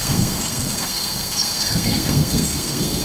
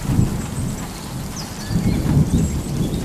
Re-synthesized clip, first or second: first